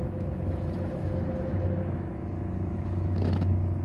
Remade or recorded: remade